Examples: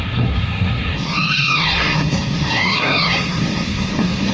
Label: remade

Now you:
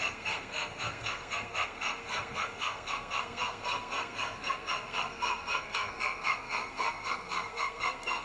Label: remade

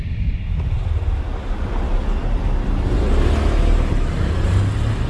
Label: recorded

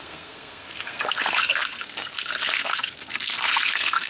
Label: remade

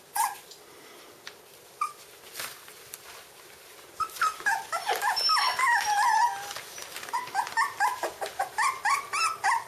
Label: recorded